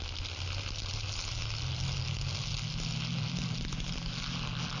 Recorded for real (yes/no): yes